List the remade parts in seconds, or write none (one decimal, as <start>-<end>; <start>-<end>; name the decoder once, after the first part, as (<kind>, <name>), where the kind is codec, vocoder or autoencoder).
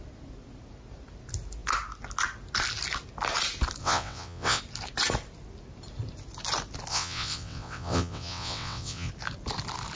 3.8-4.6 (vocoder, WaveNeXt); 6.9-9.1